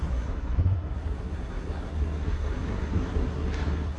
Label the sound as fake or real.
fake